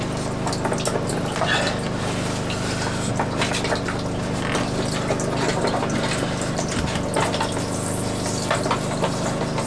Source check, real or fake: real